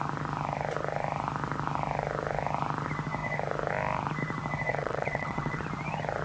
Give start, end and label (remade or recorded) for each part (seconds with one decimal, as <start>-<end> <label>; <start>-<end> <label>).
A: 0.0-4.7 recorded; 4.7-5.6 remade; 5.6-6.2 recorded